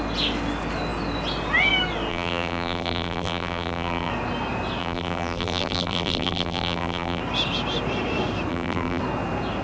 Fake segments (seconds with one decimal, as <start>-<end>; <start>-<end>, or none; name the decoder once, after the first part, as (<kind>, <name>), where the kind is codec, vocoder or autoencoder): 2.1-4.1 (vocoder, BigVGAN v2); 4.8-7.2; 8.5-9.0